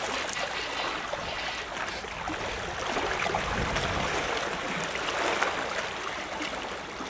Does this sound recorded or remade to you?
recorded